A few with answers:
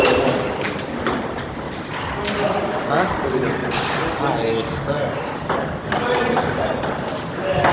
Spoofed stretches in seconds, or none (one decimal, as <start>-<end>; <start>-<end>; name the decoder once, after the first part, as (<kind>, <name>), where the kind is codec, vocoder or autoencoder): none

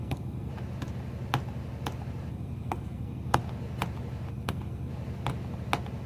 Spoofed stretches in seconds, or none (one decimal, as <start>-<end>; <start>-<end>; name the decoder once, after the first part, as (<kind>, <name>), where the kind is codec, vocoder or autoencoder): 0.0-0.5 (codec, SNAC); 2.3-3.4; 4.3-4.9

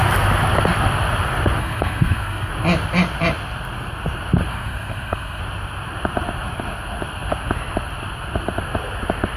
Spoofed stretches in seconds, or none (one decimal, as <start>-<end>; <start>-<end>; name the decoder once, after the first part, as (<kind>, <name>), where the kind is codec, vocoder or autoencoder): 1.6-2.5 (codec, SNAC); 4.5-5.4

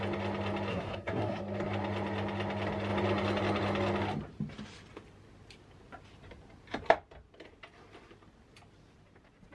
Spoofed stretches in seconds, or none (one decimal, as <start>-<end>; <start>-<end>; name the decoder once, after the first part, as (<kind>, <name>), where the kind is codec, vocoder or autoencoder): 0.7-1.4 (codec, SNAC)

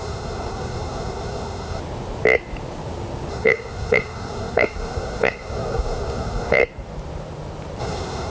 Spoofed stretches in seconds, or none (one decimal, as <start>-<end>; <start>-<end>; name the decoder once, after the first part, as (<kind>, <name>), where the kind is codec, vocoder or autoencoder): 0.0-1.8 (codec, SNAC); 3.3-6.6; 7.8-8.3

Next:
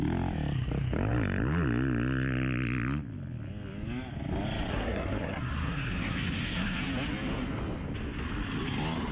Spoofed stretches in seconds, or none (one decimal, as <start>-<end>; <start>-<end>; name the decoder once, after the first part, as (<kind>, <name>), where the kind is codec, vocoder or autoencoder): 4.7-6.8 (codec, SNAC)